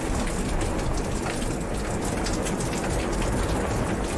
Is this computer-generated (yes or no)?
no